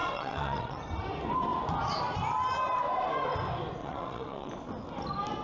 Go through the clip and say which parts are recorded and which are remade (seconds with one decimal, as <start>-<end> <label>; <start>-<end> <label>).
0.0-0.8 remade; 0.8-3.8 recorded; 3.8-4.5 remade; 4.5-5.4 recorded